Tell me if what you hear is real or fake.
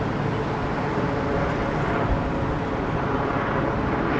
real